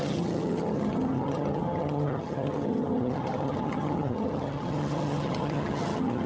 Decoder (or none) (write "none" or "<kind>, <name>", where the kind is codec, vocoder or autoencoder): vocoder, HiFi-GAN